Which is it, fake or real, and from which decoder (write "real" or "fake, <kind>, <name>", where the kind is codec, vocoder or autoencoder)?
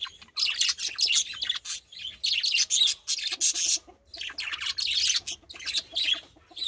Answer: real